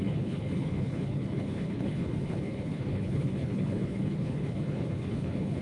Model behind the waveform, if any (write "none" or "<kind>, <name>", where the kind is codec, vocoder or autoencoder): codec, HILCodec